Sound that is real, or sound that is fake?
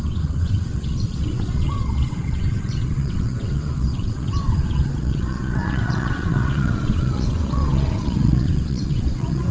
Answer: fake